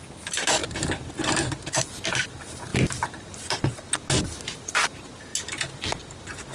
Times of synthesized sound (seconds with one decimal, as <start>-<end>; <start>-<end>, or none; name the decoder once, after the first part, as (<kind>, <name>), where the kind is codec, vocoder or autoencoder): none